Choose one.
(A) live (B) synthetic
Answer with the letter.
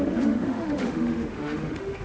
B